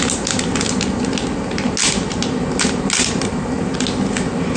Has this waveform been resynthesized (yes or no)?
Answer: no